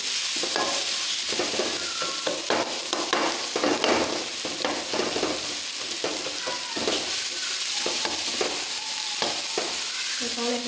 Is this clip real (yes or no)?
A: yes